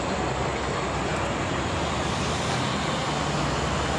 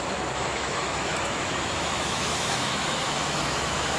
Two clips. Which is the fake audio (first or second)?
second